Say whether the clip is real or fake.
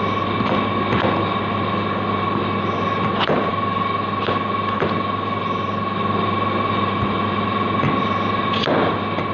real